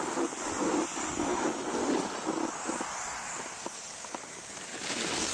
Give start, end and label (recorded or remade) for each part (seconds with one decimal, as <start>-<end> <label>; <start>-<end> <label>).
0.0-1.3 remade; 1.3-3.5 recorded; 3.5-5.3 remade